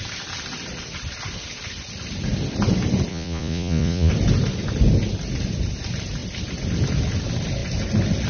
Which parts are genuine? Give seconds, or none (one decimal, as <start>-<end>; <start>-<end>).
0.0-3.1; 4.1-8.3